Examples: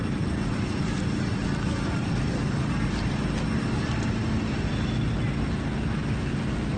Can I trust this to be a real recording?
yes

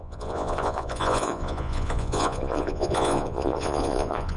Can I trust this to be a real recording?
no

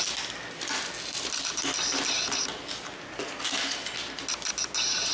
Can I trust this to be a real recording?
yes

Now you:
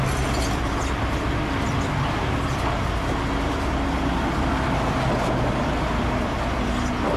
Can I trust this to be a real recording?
yes